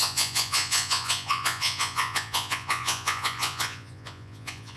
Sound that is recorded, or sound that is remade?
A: remade